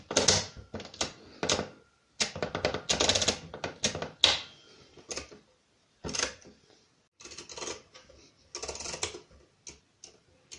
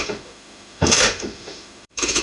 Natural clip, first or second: first